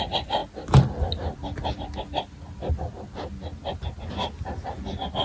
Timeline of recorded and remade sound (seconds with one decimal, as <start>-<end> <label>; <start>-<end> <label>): 0.0-5.2 recorded